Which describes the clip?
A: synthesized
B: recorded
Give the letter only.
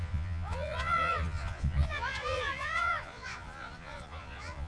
A